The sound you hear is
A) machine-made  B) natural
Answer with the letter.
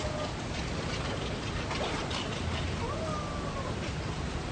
B